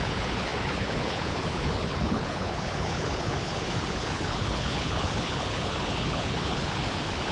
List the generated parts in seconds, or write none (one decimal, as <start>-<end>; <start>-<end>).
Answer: 0.0-7.3